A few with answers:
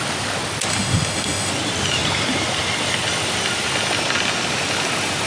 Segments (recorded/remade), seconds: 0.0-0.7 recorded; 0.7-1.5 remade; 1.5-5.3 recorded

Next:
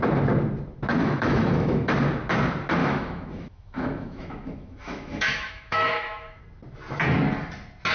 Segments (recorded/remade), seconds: 0.0-1.0 recorded; 1.0-1.9 remade; 1.9-2.8 recorded; 2.8-6.4 remade; 6.4-7.9 recorded

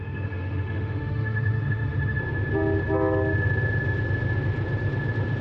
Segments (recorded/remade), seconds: 0.0-2.2 remade; 2.2-5.4 recorded

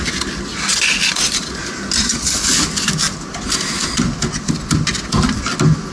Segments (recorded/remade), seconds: 0.0-5.9 recorded

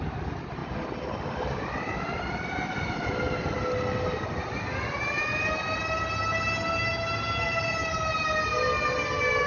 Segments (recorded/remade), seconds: 0.0-9.5 recorded